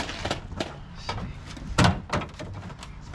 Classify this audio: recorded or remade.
recorded